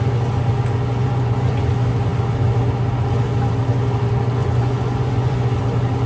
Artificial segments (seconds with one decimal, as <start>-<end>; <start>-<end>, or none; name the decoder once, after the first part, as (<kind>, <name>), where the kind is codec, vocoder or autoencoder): 1.0-1.7 (vocoder, Vocos); 4.4-5.6